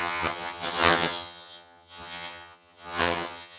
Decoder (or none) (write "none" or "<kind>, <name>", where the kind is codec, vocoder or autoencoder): vocoder, HiFi-GAN